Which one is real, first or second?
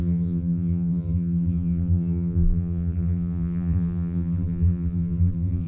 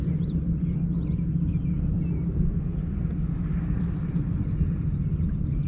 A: second